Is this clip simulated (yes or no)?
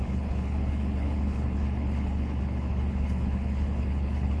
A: yes